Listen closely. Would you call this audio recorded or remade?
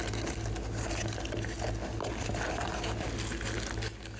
recorded